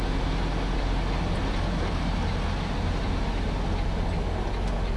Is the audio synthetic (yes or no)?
no